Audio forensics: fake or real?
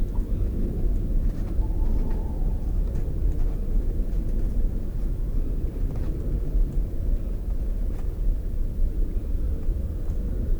fake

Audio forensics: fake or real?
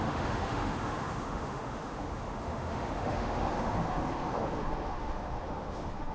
fake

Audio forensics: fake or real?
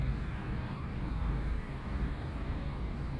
fake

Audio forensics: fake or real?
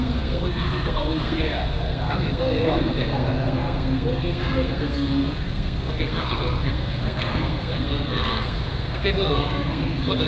fake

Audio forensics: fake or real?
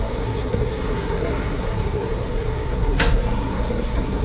fake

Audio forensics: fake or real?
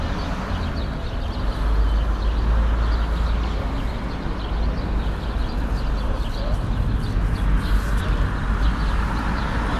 real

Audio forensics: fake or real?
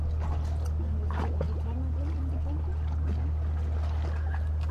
real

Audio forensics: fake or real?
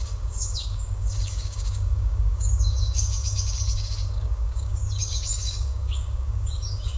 fake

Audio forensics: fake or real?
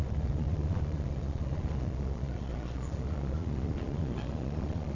fake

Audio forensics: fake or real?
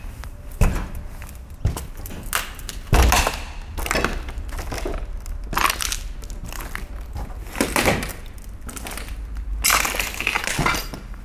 real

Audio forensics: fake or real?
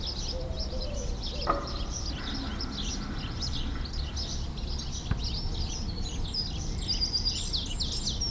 real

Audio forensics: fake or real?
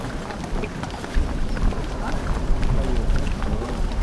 real